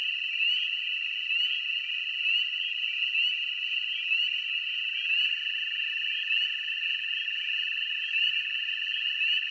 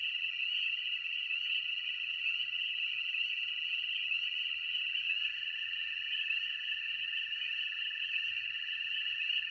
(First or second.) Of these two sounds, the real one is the first